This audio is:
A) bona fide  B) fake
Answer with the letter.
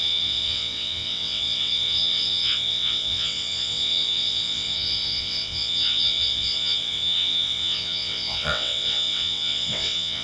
B